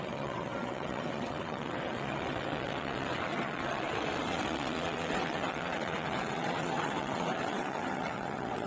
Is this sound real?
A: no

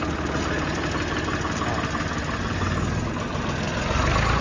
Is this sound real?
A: yes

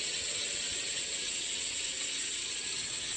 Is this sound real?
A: no